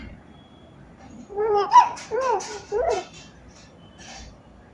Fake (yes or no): yes